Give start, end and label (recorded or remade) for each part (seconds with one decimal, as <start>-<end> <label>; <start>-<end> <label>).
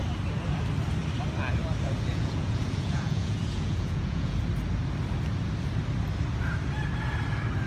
0.0-2.1 recorded; 2.1-4.4 remade; 4.4-7.7 recorded